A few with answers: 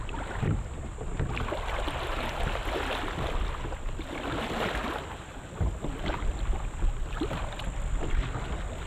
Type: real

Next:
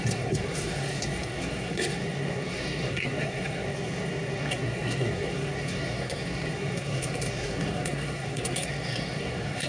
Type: fake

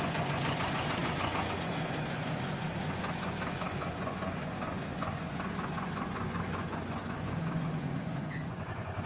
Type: fake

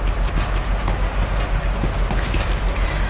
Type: real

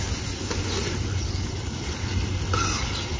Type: real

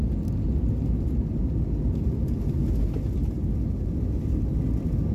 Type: real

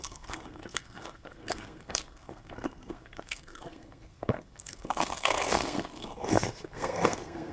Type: fake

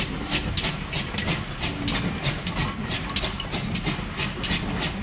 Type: real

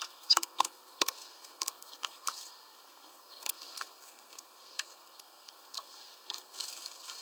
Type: fake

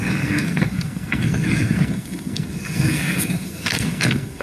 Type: fake